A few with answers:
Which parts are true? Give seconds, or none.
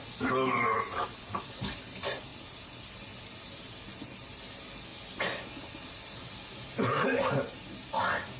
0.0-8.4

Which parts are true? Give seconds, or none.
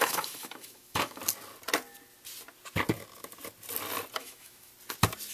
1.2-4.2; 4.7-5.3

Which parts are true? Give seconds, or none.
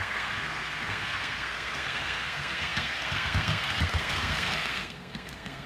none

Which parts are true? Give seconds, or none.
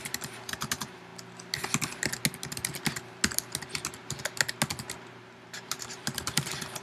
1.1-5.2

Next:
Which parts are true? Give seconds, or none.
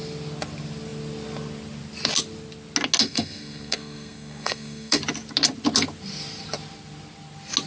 0.0-3.0; 5.0-7.7